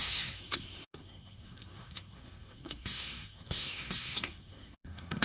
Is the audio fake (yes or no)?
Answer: yes